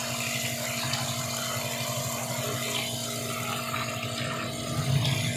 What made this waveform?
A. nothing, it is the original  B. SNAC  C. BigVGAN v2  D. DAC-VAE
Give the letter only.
A